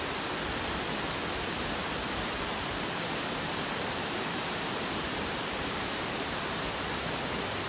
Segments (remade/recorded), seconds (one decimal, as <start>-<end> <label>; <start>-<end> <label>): 0.0-1.8 recorded; 1.8-6.4 remade; 6.4-7.7 recorded